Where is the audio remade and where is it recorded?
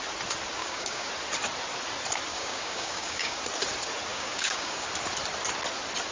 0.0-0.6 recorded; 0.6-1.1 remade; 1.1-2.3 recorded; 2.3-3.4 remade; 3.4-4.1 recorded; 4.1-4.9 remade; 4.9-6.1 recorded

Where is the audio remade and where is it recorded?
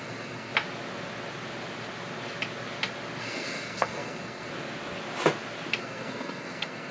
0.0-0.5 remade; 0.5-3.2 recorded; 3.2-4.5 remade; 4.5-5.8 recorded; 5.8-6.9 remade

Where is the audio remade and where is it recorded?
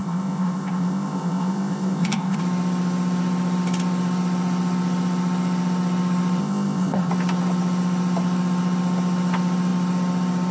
0.0-2.4 remade; 2.4-6.4 recorded; 6.4-7.1 remade; 7.1-10.5 recorded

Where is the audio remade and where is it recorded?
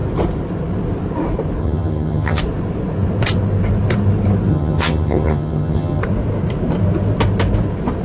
0.0-1.6 recorded; 1.6-2.4 remade; 2.4-4.5 recorded; 4.5-6.0 remade; 6.0-8.0 recorded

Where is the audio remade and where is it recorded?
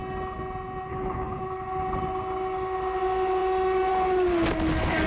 0.0-0.9 recorded; 0.9-1.4 remade; 1.4-5.1 recorded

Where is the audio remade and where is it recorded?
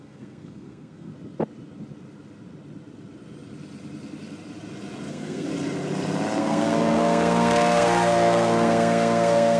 0.0-1.1 remade; 1.1-5.1 recorded; 5.1-5.5 remade; 5.5-6.4 recorded; 6.4-9.6 remade